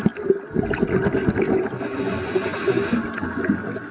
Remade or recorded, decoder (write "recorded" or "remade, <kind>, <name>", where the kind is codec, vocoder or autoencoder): recorded